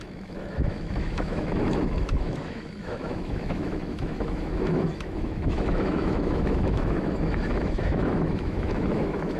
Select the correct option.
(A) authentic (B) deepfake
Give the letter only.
B